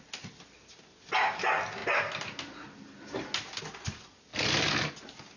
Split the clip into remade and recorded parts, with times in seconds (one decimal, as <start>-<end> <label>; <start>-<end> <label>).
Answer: 0.0-5.4 recorded